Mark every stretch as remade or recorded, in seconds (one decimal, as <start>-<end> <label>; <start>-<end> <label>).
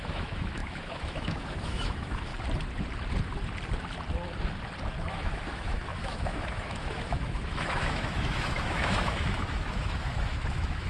0.0-2.3 remade; 2.3-5.1 recorded; 5.1-10.9 remade